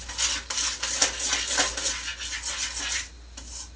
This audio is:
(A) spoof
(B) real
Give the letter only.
B